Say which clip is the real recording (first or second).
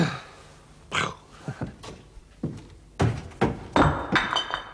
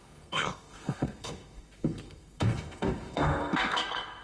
first